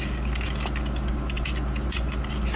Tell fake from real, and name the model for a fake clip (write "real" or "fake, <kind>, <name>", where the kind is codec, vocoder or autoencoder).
real